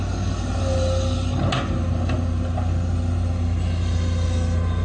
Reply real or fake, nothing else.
real